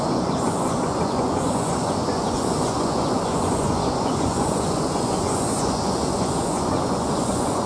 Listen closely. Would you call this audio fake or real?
fake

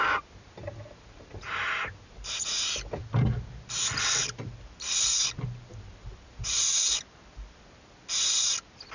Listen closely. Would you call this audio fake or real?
real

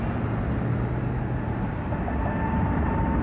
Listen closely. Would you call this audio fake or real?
real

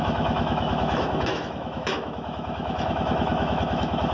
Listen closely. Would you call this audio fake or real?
fake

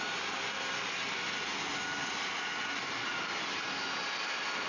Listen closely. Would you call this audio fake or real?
real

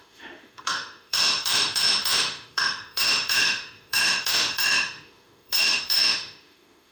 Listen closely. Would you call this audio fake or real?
fake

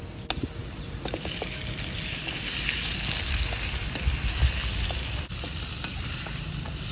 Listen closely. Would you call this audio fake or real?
real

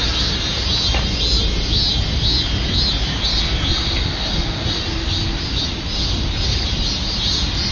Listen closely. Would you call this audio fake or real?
real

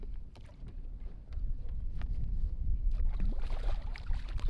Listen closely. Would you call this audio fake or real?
fake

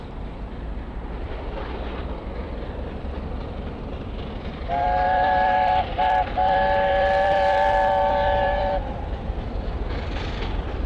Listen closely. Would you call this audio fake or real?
fake